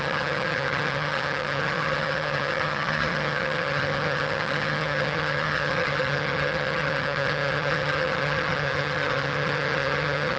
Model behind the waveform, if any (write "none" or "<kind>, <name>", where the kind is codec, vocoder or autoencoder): vocoder, HiFi-GAN